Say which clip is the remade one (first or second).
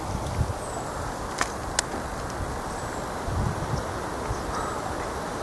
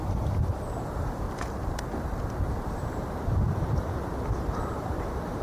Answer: second